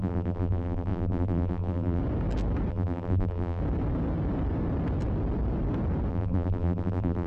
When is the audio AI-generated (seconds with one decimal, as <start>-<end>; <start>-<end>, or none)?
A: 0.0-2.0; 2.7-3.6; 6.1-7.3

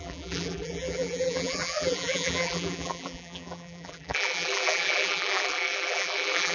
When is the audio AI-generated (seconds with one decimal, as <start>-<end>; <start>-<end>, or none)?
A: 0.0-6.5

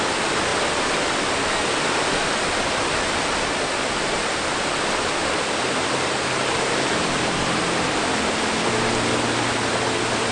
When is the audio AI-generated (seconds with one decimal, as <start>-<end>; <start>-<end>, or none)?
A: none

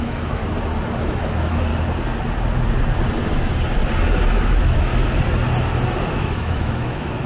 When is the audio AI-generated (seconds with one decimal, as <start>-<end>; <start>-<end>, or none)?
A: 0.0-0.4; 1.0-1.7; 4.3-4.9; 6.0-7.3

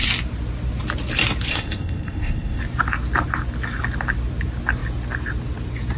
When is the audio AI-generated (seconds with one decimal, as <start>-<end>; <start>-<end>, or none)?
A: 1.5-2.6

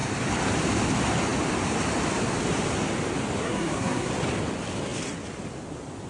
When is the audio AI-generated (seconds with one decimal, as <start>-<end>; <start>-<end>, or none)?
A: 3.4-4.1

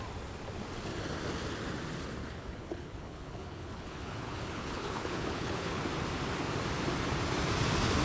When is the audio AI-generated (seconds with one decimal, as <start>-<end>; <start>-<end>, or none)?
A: 2.2-5.8